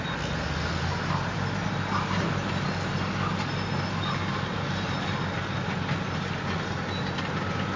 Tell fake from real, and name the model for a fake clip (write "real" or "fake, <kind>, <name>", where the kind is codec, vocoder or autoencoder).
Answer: real